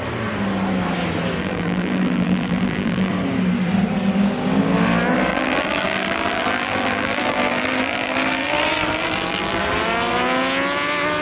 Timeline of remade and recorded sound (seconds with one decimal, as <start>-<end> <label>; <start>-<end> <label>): 0.0-1.4 recorded; 1.4-3.1 remade; 3.1-5.3 recorded; 5.3-9.6 remade; 9.6-11.2 recorded